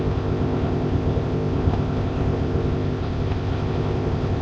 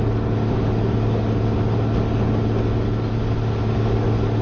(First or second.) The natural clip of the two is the second